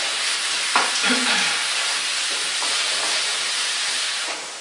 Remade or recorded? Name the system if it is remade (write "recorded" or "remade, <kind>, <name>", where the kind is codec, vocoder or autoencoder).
remade, vocoder, BigVGAN v2